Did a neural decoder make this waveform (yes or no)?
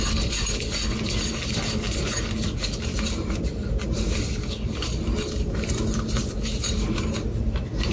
no